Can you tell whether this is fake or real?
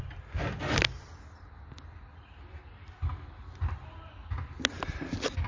real